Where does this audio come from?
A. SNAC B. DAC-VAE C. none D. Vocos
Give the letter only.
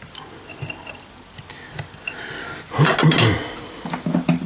C